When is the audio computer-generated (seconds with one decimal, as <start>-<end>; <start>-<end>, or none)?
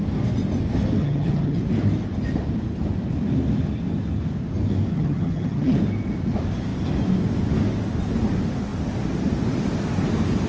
1.0-1.6; 4.9-5.8